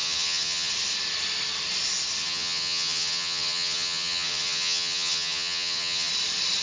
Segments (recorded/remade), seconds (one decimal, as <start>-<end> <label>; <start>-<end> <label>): 0.0-0.7 remade; 0.7-2.2 recorded; 2.2-6.1 remade; 6.1-6.6 recorded